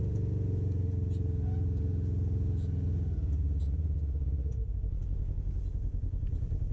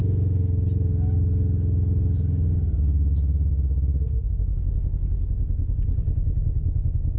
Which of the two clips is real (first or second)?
second